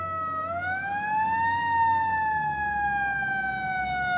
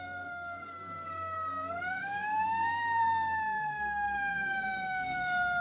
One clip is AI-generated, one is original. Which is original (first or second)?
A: first